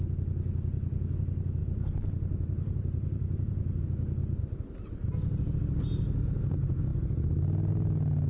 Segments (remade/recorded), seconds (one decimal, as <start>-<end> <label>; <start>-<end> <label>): 0.0-1.6 recorded; 1.6-3.8 remade; 3.8-8.3 recorded